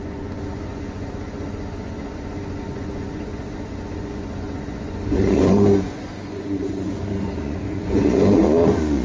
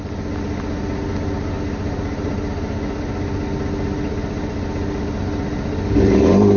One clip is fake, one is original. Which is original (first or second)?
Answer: second